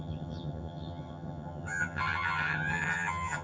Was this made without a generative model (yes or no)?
no